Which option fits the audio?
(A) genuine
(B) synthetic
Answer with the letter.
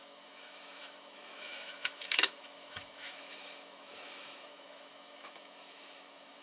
B